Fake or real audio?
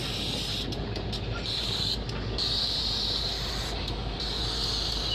real